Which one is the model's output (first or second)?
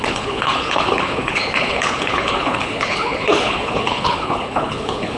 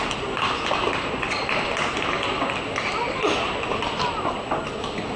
first